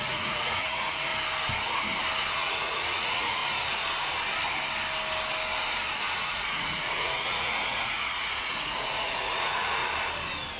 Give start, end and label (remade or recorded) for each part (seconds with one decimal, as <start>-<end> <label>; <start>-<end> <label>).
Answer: 0.0-1.1 remade; 1.1-2.3 recorded; 2.3-3.4 remade; 3.4-6.0 recorded; 6.0-9.8 remade; 9.8-10.6 recorded